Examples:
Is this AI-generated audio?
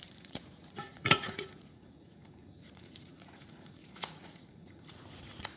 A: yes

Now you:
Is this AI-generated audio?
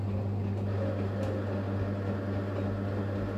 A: no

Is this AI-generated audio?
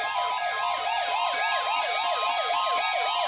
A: no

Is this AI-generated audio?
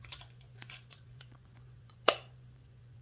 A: yes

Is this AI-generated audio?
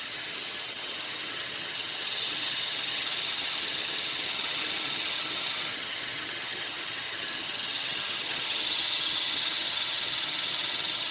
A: yes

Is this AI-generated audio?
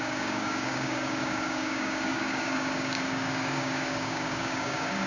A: yes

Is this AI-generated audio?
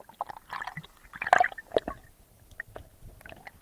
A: no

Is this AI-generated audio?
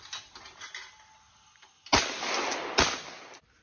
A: no